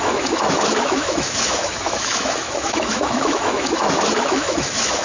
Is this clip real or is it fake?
fake